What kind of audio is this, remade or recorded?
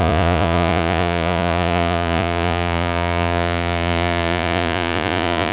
remade